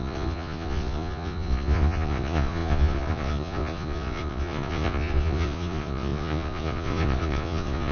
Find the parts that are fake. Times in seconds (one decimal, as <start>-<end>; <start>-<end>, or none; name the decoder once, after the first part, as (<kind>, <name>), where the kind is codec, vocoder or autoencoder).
0.0-7.9 (vocoder, Vocos)